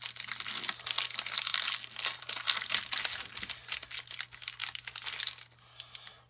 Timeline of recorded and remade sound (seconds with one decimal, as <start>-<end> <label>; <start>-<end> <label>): 0.0-6.3 recorded